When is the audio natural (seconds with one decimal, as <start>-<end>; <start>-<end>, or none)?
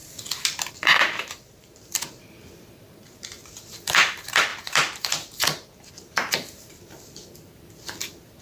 0.0-0.7